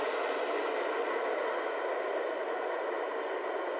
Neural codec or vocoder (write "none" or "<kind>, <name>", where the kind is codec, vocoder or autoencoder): none